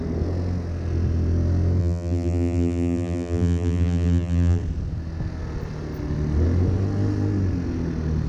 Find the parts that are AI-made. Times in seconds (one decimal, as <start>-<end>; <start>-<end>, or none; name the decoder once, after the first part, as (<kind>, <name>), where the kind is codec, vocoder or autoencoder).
1.8-4.6 (vocoder, BigVGAN v2)